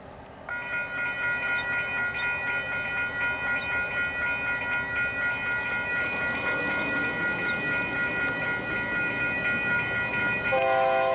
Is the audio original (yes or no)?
yes